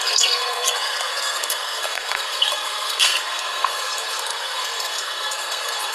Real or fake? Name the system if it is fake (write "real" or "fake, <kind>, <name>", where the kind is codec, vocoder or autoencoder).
fake, codec, SNAC